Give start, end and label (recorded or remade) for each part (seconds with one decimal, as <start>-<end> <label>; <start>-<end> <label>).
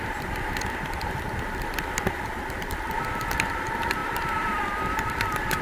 0.0-5.6 remade